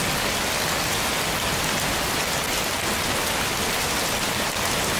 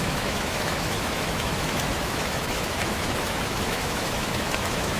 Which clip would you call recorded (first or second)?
first